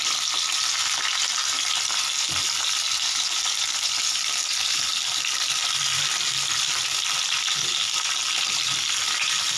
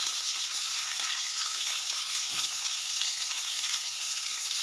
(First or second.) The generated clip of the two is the second